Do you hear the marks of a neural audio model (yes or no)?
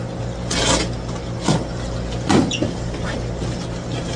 no